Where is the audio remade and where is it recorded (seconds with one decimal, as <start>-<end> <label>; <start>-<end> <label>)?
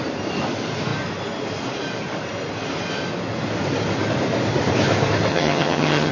0.0-5.3 recorded; 5.3-6.1 remade